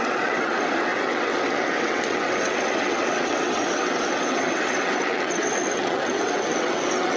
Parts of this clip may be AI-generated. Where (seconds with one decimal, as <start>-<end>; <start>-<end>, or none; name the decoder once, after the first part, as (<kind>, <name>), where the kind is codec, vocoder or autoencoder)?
0.0-7.2 (vocoder, WaveNeXt)